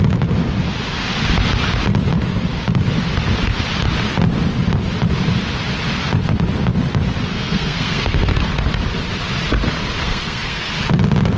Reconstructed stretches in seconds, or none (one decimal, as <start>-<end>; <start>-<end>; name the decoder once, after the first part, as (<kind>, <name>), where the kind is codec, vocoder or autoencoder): 7.3-8.4 (codec, SNAC); 10.0-10.7